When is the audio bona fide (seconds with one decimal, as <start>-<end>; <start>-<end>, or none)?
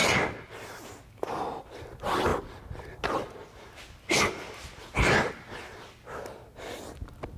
0.0-7.4